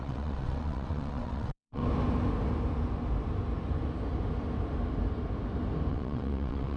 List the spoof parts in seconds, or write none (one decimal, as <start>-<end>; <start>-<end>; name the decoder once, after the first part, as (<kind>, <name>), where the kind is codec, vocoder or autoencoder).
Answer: 0.0-1.8 (vocoder, WaveNeXt); 5.9-6.8

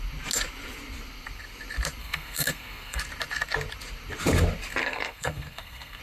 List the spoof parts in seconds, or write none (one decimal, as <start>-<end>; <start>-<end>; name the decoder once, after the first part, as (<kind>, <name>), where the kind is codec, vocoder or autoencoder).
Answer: 2.0-3.0 (codec, SNAC); 4.8-6.0